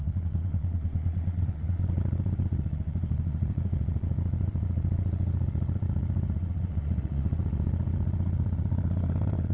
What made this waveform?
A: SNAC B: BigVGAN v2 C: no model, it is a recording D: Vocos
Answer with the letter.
D